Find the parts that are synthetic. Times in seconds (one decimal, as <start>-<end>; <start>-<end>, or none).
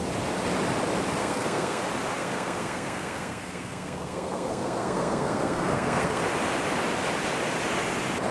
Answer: 1.2-1.8; 2.2-6.2